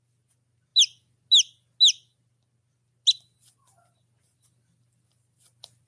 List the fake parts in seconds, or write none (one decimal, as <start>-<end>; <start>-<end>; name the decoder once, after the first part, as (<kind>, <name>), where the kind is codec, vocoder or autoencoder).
none